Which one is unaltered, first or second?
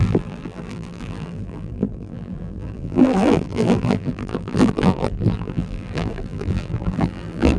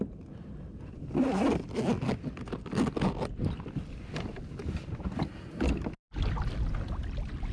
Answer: second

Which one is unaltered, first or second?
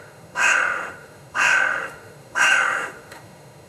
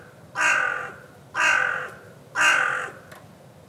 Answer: second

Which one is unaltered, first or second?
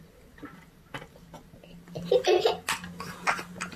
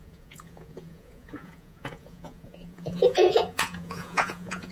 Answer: first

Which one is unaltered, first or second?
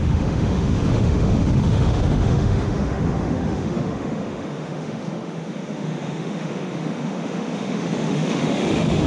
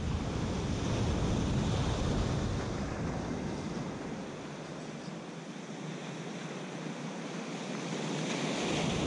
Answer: second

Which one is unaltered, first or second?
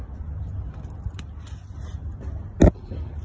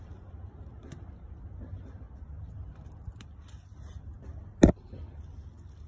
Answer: first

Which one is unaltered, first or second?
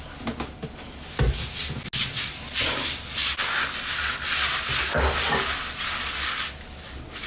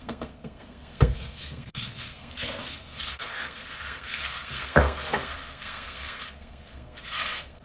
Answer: first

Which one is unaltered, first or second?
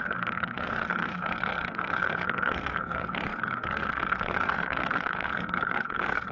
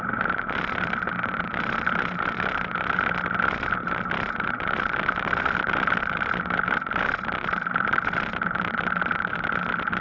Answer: second